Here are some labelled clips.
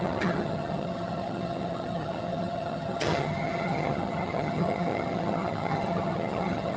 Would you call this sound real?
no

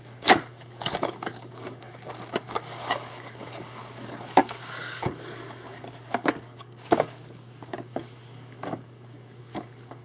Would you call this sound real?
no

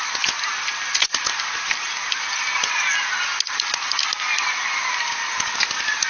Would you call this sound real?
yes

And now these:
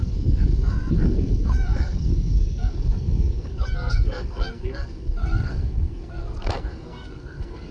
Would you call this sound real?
no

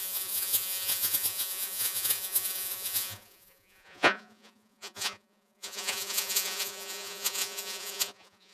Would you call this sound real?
no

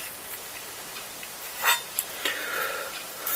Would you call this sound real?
no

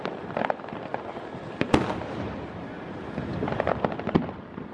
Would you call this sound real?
yes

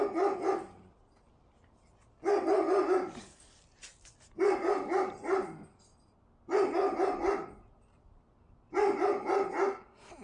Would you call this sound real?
yes